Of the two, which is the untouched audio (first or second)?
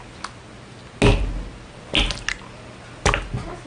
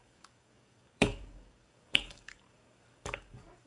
first